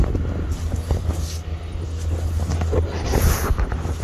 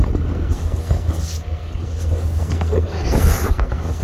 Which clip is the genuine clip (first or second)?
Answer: first